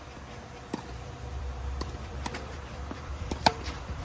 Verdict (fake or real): fake